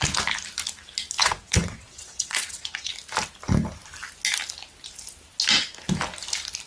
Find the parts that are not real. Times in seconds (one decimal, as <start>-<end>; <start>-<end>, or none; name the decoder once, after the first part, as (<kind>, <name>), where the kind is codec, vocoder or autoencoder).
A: 1.2-2.9 (vocoder, WaveNeXt)